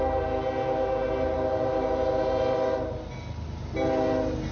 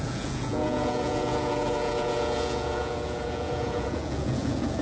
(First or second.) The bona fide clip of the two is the first